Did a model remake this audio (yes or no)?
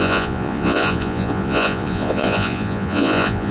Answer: yes